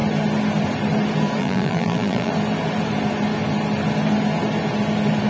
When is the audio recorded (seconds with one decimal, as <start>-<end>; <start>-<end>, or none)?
0.0-1.4; 2.3-5.3